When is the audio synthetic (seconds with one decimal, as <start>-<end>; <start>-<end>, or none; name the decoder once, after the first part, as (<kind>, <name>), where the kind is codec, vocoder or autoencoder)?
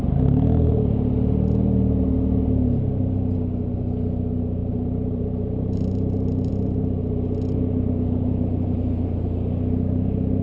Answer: 4.6-6.5 (vocoder, BigVGAN v2)